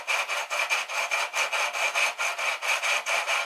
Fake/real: real